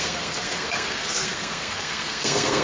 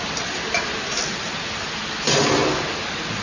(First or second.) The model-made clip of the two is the first